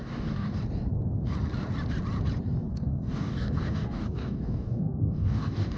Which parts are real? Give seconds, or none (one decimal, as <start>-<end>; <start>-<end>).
0.6-2.7